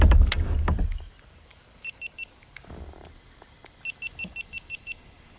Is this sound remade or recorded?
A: recorded